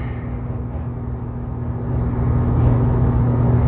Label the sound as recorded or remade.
recorded